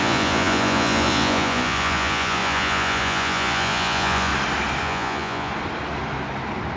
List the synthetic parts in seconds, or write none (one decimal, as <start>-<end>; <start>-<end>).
0.0-4.3; 4.8-5.5